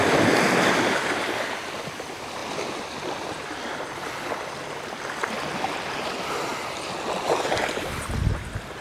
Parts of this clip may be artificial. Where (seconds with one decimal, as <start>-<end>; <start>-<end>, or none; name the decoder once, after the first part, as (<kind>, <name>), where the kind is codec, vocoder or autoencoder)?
none